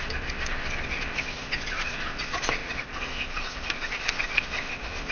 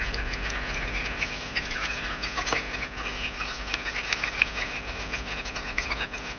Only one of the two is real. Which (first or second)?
second